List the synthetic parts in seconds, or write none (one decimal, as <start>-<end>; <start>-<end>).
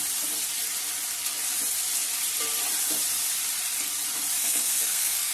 4.4-5.3